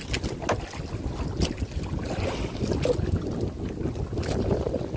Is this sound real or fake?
real